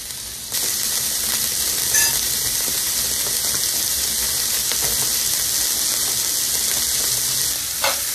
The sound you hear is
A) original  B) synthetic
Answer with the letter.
A